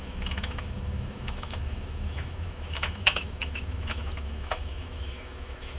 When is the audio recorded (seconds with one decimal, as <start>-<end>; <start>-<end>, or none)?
none